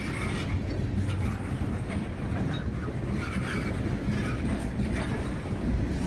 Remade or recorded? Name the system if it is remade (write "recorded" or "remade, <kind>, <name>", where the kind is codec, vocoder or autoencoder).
recorded